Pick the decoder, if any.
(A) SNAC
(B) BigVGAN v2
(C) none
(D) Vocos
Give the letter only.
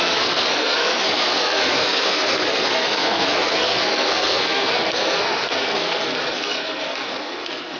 A